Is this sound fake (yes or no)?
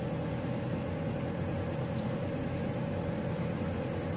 no